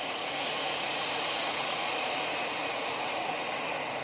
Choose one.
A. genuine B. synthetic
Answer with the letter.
B